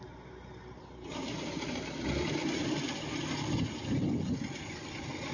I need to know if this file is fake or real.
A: real